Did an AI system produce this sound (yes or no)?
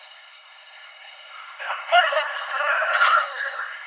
yes